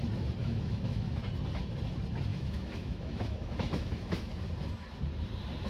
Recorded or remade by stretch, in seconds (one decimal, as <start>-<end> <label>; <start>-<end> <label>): 0.0-0.4 recorded; 0.4-1.2 remade; 1.2-2.3 recorded; 2.3-4.3 remade; 4.3-5.7 recorded